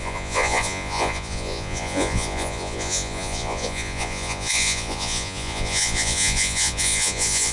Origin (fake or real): fake